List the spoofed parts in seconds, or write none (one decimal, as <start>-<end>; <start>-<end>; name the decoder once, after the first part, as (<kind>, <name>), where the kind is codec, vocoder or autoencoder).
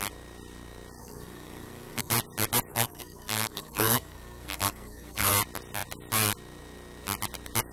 1.0-2.1 (codec, SNAC); 2.7-5.3